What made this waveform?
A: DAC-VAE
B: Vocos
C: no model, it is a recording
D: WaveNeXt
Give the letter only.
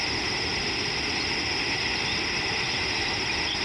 C